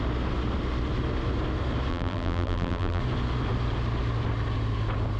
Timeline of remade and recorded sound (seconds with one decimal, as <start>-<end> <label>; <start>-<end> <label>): 0.0-1.9 recorded; 1.9-3.0 remade; 3.0-5.2 recorded